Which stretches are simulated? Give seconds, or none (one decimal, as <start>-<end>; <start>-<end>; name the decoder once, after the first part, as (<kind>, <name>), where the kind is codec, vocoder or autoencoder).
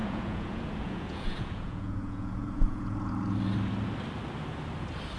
0.0-3.1 (vocoder, Vocos)